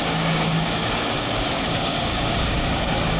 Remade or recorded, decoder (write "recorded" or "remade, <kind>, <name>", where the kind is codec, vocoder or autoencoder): remade, codec, DAC